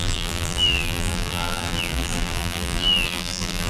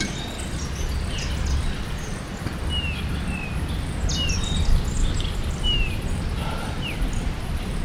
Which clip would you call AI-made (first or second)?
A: first